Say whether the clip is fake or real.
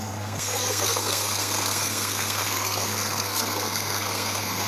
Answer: fake